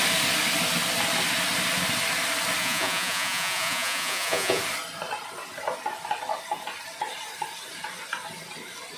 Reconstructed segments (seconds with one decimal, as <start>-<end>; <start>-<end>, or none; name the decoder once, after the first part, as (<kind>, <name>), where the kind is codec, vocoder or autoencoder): 2.6-4.6 (vocoder, Vocos)